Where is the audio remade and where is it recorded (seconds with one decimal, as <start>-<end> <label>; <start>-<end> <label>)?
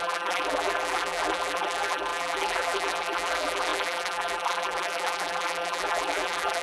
0.0-6.6 remade